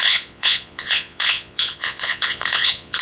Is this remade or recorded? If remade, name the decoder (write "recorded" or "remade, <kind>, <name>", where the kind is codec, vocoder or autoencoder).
remade, vocoder, Vocos